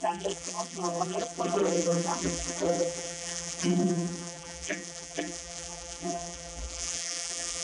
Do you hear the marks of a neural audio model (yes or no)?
yes